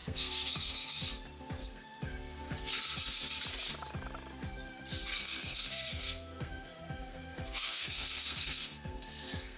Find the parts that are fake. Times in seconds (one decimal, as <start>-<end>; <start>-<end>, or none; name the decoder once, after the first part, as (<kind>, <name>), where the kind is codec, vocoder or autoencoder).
0.0-1.0 (codec, SNAC); 1.6-2.8; 5.1-9.6

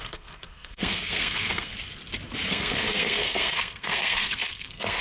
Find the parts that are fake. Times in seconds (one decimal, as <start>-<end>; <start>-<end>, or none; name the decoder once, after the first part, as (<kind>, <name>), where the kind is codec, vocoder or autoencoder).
0.0-1.7 (codec, SNAC); 2.5-5.0